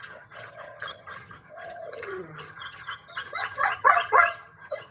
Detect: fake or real fake